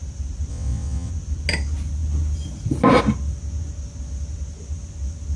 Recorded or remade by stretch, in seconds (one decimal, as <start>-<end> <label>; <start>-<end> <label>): 0.0-0.5 recorded; 0.5-1.1 remade; 1.1-5.4 recorded